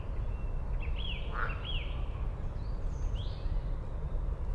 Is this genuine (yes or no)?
yes